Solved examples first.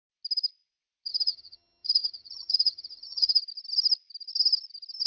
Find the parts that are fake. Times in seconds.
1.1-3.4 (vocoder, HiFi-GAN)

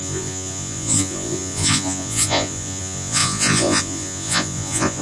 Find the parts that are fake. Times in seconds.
0.0-5.0 (vocoder, Vocos)

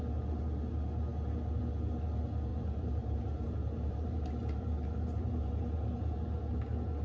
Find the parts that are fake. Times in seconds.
2.5-6.6 (vocoder, BigVGAN v2)

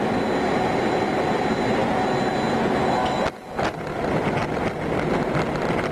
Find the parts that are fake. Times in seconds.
none

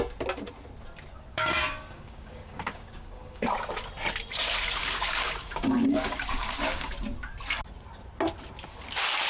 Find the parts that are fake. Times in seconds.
1.3-3.4 (codec, DAC); 4.8-6.9